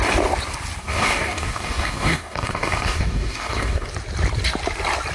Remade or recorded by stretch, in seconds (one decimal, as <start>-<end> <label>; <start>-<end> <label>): 0.0-0.8 recorded; 0.8-3.9 remade; 3.9-5.1 recorded